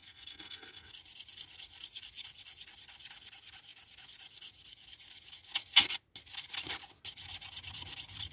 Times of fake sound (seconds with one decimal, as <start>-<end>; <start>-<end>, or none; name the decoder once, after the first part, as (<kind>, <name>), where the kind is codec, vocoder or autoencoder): 0.0-0.9 (codec, SNAC)